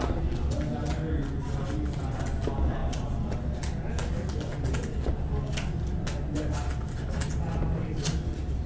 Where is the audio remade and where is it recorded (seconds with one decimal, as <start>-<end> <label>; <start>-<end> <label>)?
0.0-8.7 recorded